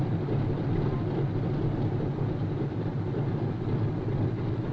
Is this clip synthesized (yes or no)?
no